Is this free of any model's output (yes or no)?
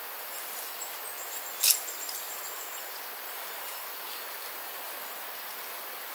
yes